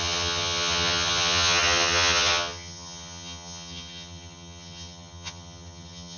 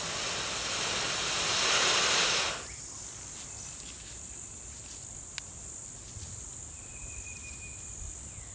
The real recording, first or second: second